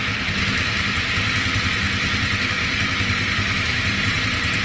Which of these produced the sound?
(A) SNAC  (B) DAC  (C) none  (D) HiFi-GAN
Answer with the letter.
C